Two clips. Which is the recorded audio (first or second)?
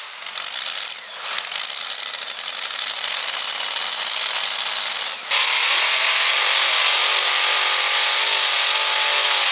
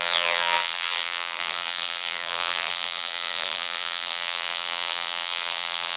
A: first